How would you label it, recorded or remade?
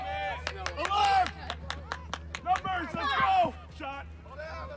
recorded